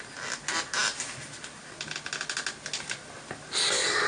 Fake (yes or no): no